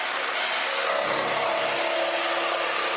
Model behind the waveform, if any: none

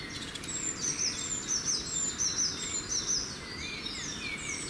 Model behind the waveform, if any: none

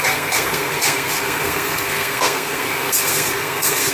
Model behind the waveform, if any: codec, SNAC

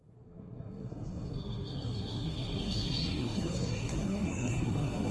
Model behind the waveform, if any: codec, SNAC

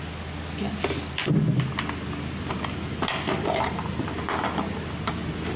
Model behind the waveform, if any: none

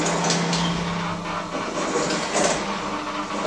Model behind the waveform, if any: none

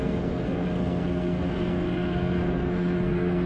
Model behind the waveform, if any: codec, SNAC